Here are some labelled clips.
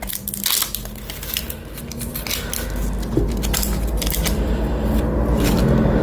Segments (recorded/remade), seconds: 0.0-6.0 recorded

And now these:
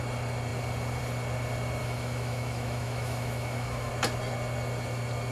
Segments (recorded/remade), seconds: 0.0-1.8 recorded; 1.8-3.9 remade; 3.9-5.3 recorded

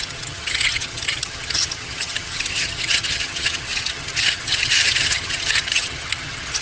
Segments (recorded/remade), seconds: 0.0-6.6 remade

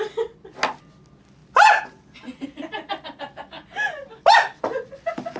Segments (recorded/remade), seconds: 0.0-5.4 recorded

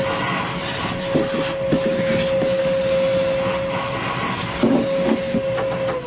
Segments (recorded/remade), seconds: 0.0-6.1 recorded